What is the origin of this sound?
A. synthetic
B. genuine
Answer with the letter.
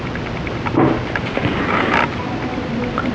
B